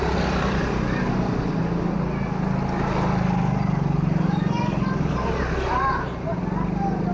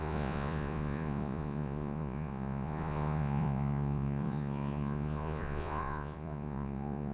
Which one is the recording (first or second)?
first